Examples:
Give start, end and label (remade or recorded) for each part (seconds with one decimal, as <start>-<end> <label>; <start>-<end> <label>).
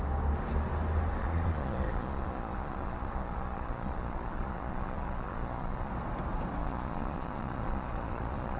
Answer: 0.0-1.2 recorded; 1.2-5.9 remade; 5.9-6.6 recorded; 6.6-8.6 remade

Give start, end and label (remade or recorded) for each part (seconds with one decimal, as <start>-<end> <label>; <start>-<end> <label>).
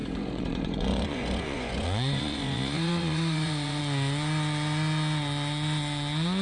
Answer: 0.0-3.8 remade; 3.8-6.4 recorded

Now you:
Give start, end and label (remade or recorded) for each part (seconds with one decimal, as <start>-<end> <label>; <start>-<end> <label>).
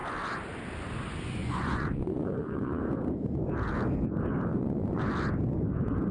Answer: 0.0-1.4 recorded; 1.4-2.8 remade; 2.8-4.5 recorded; 4.5-5.1 remade; 5.1-6.1 recorded